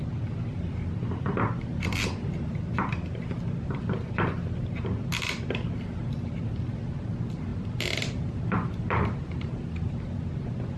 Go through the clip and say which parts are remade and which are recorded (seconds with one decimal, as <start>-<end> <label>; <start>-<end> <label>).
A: 0.0-7.5 recorded; 7.5-10.0 remade; 10.0-10.8 recorded